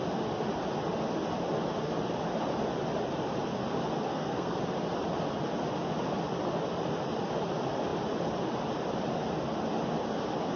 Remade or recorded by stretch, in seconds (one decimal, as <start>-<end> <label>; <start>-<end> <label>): 0.0-4.1 recorded; 4.1-4.6 remade; 4.6-10.6 recorded